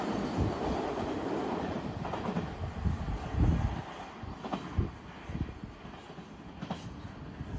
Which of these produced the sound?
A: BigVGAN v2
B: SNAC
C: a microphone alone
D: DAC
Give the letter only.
C